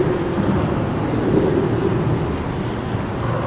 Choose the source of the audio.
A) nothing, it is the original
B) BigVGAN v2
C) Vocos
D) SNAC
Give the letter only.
A